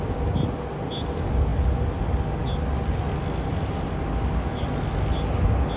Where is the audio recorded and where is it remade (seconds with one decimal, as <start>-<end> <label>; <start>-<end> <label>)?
0.0-5.8 recorded